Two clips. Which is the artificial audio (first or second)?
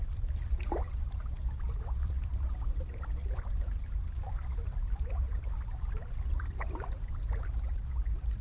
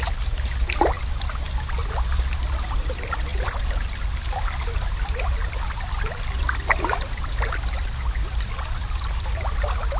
first